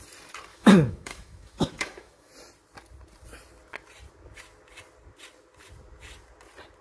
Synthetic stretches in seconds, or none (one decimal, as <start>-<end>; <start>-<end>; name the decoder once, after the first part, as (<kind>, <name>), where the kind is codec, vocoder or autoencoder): 0.5-2.3 (autoencoder, DAC-VAE)